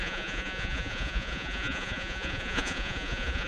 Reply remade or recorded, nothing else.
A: remade